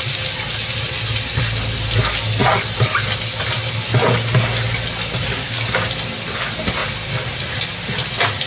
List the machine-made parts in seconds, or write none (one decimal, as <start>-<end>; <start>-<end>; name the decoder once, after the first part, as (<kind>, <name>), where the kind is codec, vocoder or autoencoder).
5.4-5.9 (codec, DAC)